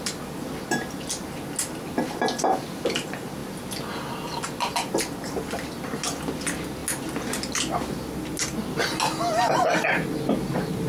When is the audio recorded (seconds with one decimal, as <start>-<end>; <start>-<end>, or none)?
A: 0.0-10.9